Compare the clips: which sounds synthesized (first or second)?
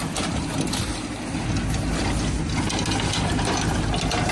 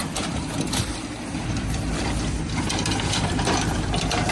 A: second